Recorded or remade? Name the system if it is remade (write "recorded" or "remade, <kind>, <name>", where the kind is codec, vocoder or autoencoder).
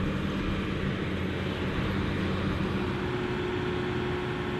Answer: recorded